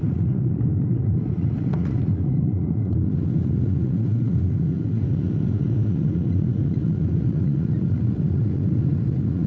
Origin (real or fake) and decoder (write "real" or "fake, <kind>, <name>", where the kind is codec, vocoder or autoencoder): fake, vocoder, Vocos